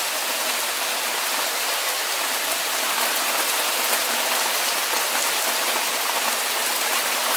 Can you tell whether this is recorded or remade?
recorded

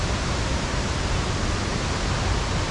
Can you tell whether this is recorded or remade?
recorded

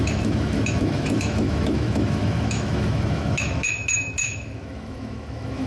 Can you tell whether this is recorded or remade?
remade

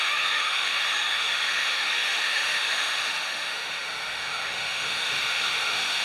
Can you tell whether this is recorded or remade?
remade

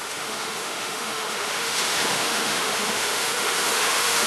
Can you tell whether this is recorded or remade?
remade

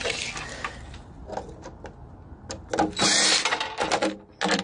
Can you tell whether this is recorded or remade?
recorded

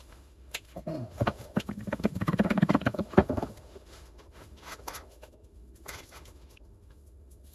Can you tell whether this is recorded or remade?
remade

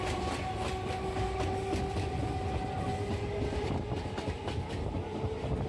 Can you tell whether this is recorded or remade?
recorded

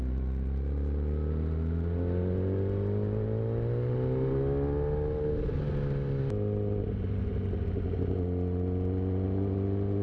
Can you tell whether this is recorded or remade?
recorded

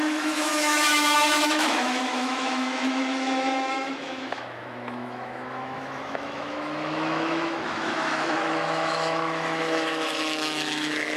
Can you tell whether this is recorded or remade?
remade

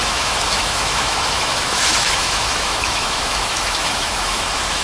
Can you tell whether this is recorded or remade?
remade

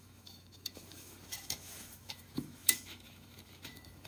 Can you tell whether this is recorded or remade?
remade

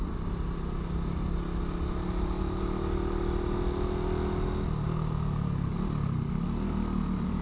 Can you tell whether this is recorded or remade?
recorded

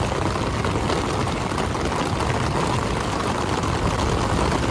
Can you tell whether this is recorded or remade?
recorded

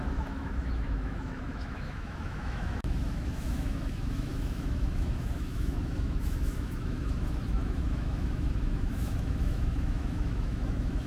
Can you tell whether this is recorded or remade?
remade